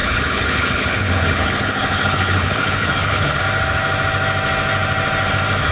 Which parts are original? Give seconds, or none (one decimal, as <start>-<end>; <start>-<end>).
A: 3.4-5.7